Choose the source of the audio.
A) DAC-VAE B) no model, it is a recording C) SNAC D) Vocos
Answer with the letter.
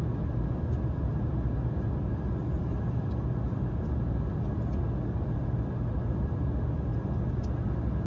B